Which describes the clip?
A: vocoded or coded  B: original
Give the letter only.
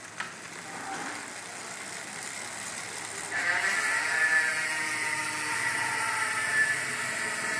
B